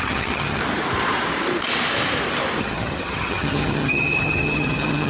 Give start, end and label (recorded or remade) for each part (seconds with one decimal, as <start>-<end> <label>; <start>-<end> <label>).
0.0-0.6 remade; 0.6-2.6 recorded; 2.6-5.1 remade